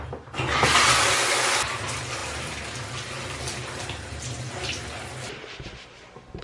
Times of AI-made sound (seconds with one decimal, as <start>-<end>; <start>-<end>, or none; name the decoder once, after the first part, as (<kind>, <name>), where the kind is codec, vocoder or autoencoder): none